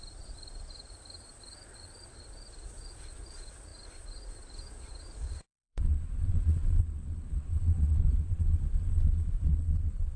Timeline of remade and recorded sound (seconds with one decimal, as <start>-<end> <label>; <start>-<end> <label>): 0.0-10.2 remade